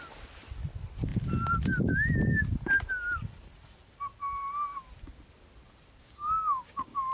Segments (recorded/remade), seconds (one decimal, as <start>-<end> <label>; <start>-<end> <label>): 0.0-6.0 recorded; 6.0-7.1 remade